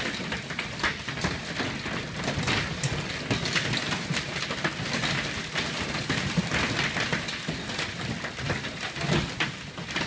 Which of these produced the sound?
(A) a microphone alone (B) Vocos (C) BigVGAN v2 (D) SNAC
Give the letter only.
A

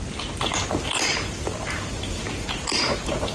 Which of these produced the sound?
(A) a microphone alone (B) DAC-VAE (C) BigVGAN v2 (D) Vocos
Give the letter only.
A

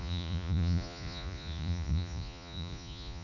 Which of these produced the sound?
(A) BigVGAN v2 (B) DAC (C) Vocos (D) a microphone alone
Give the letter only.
C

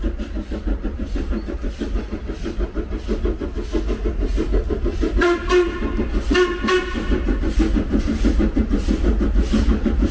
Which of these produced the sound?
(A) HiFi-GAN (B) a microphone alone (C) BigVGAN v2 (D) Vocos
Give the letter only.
B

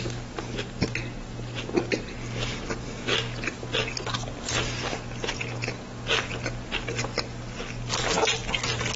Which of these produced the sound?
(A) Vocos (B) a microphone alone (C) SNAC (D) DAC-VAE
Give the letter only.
B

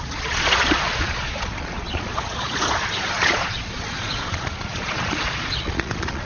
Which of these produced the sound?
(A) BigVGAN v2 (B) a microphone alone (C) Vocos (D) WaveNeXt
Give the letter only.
C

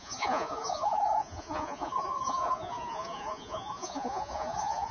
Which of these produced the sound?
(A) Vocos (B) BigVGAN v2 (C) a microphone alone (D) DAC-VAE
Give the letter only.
A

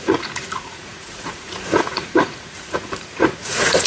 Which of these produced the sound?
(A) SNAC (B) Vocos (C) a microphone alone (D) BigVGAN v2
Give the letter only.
B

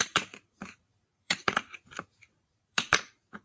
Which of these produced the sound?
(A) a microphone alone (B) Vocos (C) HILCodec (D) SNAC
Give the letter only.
B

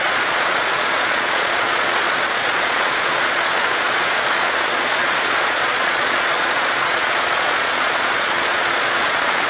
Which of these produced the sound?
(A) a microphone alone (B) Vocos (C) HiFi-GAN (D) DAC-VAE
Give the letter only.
B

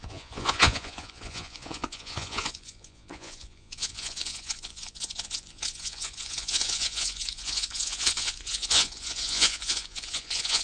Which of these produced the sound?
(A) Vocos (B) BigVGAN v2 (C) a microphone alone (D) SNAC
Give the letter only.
A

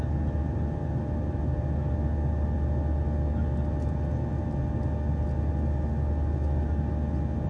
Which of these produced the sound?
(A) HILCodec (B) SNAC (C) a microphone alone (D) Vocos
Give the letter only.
C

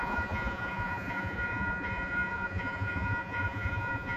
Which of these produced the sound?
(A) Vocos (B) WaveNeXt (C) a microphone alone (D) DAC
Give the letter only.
A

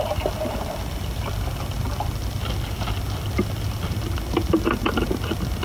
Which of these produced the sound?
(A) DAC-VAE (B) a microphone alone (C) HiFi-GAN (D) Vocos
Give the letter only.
B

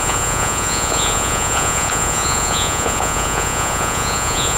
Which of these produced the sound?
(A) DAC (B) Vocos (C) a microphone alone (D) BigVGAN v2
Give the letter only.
B